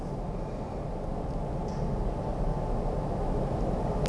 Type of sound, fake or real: real